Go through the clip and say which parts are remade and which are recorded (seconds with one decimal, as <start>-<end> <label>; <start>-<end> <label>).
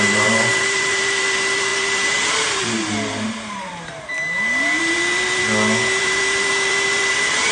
0.0-5.4 remade; 5.4-6.0 recorded; 6.0-7.5 remade